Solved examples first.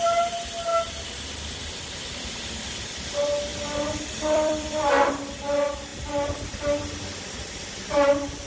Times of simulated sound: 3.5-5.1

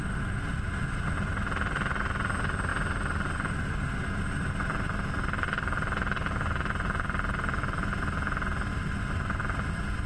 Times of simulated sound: none

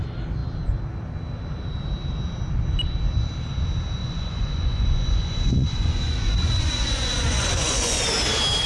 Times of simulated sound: 4.0-8.0